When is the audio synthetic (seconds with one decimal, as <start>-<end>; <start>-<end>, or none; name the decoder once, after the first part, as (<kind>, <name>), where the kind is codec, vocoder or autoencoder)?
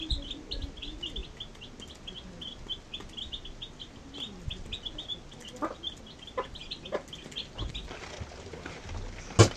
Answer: none